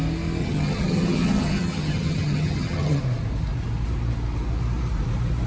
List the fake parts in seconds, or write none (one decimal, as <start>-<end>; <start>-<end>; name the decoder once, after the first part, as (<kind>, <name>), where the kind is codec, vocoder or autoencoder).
0.4-3.0 (vocoder, HiFi-GAN)